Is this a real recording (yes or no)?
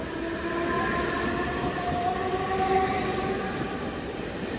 yes